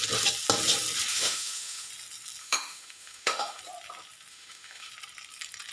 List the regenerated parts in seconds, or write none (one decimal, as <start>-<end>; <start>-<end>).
1.1-1.9; 2.4-3.6; 4.3-4.9